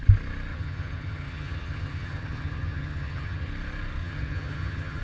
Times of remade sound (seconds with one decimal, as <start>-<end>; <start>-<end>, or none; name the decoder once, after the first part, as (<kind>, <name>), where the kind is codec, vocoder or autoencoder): 0.5-3.5 (vocoder, HiFi-GAN); 4.0-5.0